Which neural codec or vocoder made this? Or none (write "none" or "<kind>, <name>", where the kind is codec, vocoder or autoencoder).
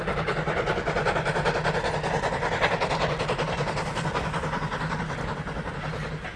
none